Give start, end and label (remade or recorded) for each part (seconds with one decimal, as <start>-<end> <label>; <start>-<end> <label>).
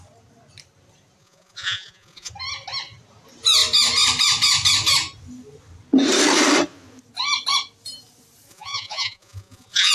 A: 0.0-1.2 recorded; 1.2-2.3 remade; 2.3-8.5 recorded; 8.5-9.9 remade